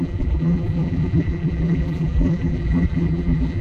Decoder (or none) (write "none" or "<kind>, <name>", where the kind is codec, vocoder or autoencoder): vocoder, BigVGAN v2